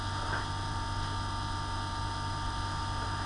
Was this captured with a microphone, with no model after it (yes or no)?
yes